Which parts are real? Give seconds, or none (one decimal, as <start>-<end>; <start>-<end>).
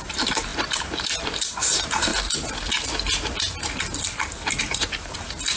2.1-4.6